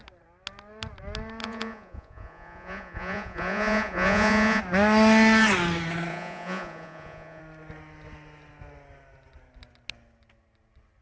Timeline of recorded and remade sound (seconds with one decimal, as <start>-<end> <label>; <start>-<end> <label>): 0.0-1.4 recorded; 1.4-4.6 remade; 4.6-6.1 recorded; 6.1-7.4 remade; 7.4-11.0 recorded